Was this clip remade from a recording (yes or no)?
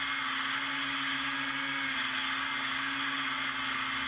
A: no